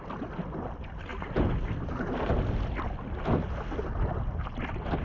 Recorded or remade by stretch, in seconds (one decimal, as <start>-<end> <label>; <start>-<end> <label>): 0.0-5.0 recorded